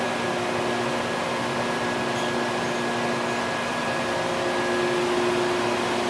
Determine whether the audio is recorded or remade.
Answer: recorded